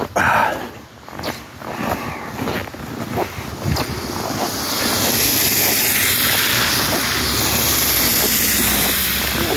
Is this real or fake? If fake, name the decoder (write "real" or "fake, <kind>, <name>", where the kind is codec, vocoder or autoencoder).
real